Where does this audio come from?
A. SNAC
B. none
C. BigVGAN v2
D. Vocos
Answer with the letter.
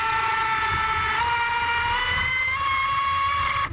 B